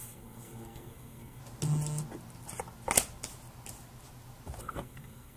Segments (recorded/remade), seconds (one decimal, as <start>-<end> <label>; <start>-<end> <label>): 0.0-1.4 remade; 1.4-4.6 recorded; 4.6-5.4 remade